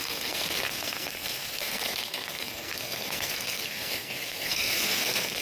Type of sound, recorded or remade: remade